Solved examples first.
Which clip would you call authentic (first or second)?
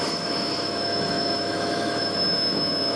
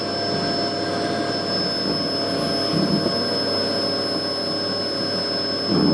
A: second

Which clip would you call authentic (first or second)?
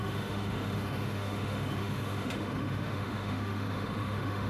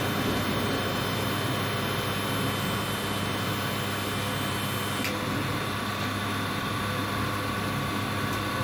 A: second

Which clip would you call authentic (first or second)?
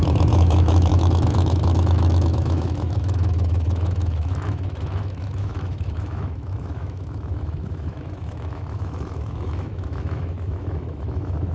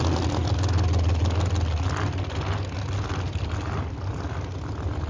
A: second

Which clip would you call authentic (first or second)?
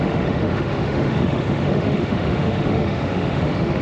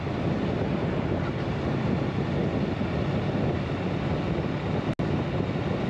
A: second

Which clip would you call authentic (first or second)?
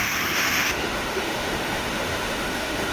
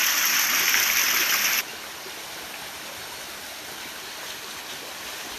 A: second